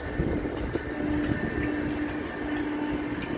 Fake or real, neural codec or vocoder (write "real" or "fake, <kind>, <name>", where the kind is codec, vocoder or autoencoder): real